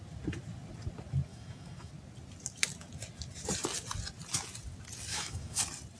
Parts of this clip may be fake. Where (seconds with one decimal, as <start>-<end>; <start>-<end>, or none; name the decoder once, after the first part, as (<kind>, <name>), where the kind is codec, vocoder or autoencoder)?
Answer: 1.3-1.9 (autoencoder, DAC-VAE); 5.1-5.6